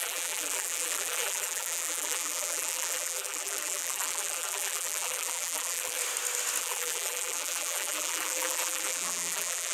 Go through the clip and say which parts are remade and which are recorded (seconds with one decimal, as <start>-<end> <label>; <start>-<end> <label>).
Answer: 0.0-6.0 remade; 6.0-6.6 recorded; 6.6-9.7 remade